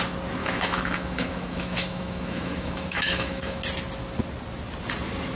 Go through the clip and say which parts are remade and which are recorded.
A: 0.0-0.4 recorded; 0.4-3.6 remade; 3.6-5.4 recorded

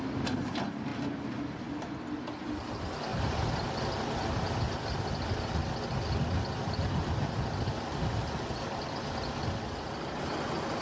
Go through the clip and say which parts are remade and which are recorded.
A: 0.0-10.8 recorded

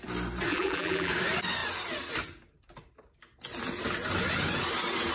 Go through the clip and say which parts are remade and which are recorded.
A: 0.0-0.5 recorded; 0.5-1.1 remade; 1.1-5.1 recorded

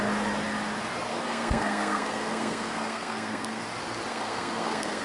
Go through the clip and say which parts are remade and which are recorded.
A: 0.0-1.1 recorded; 1.1-3.6 remade; 3.6-4.1 recorded; 4.1-5.0 remade

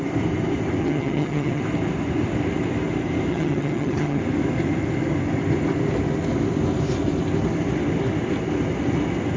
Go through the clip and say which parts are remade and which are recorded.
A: 0.0-0.8 recorded; 0.8-1.6 remade; 1.6-3.3 recorded; 3.3-4.2 remade; 4.2-9.4 recorded

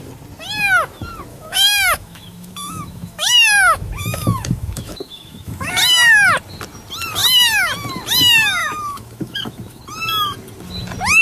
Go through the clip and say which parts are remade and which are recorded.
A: 0.0-1.3 recorded; 1.3-5.7 remade; 5.7-8.6 recorded; 8.6-9.8 remade; 9.8-11.2 recorded

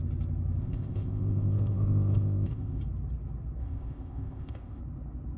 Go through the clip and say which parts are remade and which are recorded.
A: 0.0-0.6 recorded; 0.6-2.8 remade; 2.8-3.6 recorded; 3.6-4.8 remade; 4.8-5.4 recorded